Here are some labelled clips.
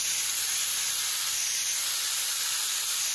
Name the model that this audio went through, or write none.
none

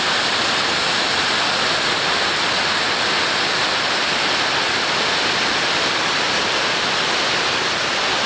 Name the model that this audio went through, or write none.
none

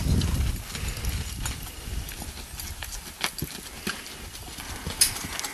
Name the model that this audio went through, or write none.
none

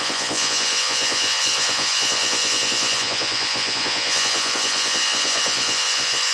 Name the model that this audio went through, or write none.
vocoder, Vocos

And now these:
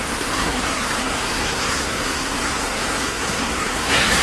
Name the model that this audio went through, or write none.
codec, SNAC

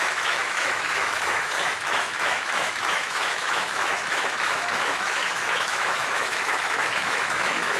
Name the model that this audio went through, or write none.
autoencoder, DAC-VAE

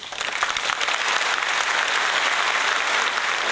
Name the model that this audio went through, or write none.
none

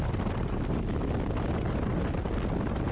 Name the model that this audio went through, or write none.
none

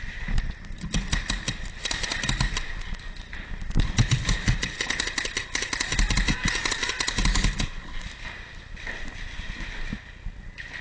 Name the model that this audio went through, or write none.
none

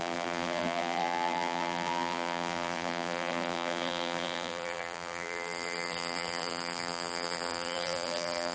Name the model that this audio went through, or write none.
vocoder, BigVGAN v2